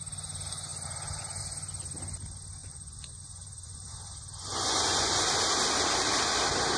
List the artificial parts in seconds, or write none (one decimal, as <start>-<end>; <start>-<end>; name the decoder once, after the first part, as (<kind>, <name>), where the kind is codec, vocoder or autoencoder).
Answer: 2.6-5.2 (vocoder, Vocos)